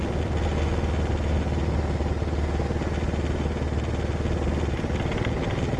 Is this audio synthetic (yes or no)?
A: no